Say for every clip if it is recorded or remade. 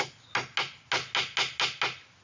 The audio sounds recorded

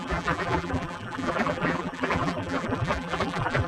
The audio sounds remade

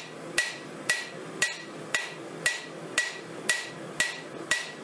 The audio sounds recorded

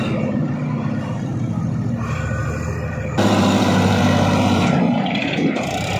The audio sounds remade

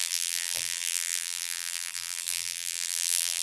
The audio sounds remade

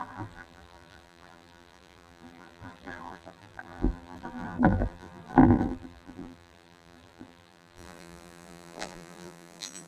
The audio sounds remade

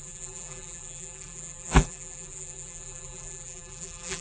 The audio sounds remade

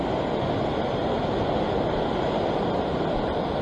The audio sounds recorded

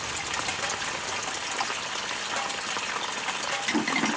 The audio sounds recorded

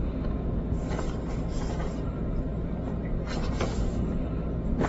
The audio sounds recorded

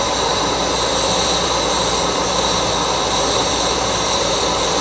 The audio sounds remade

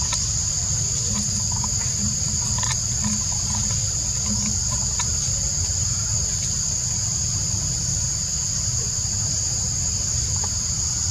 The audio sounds recorded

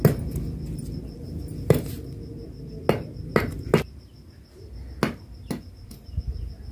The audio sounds recorded